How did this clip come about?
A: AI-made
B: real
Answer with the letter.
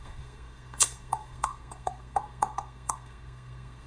A